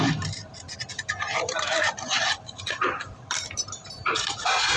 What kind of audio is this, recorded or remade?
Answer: remade